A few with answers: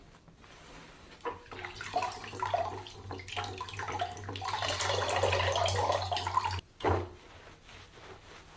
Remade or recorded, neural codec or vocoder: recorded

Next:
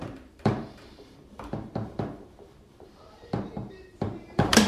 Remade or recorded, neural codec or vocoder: remade, vocoder, BigVGAN v2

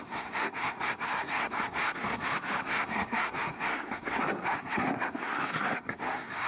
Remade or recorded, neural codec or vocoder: remade, codec, SNAC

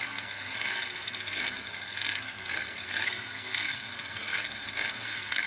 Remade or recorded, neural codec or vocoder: remade, codec, SNAC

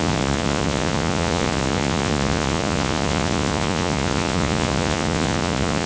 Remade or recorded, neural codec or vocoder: remade, vocoder, Vocos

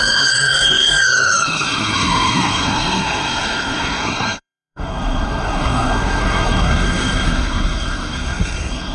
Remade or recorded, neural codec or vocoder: remade, codec, SNAC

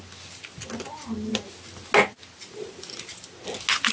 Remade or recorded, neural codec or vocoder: recorded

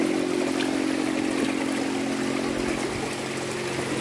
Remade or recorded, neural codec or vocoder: recorded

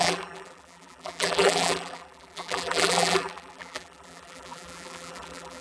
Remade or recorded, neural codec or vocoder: remade, vocoder, BigVGAN v2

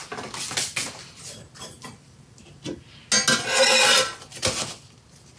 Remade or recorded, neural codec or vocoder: recorded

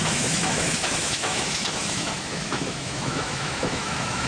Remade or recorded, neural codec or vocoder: remade, autoencoder, DAC-VAE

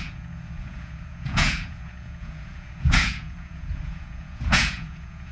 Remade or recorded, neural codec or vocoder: remade, vocoder, Vocos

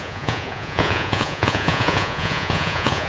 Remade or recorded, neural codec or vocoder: remade, vocoder, Vocos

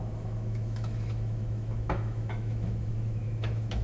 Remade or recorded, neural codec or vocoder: remade, autoencoder, DAC-VAE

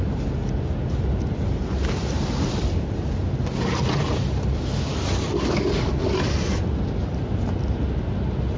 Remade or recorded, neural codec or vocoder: recorded